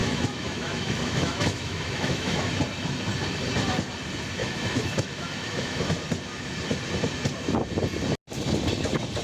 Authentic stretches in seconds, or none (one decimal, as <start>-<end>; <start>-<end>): 2.5-4.4; 5.8-9.2